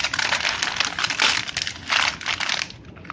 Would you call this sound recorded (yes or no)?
yes